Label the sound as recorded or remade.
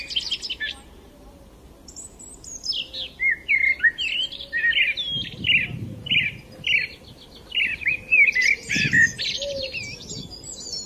recorded